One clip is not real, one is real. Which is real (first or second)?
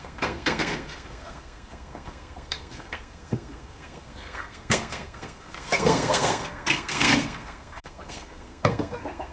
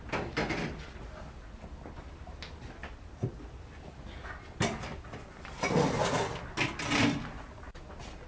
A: second